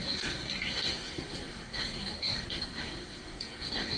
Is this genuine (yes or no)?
no